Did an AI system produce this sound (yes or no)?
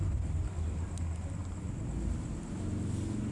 no